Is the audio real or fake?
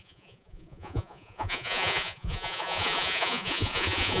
fake